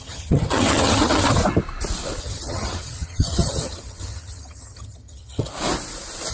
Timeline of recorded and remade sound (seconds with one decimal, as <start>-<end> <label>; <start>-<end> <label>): 0.0-1.4 remade; 1.4-2.2 recorded; 2.2-5.5 remade; 5.5-6.3 recorded